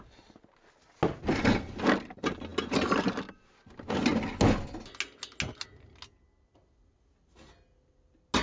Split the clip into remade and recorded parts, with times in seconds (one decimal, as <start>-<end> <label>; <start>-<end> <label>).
0.0-8.4 recorded